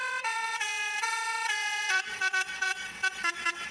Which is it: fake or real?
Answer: fake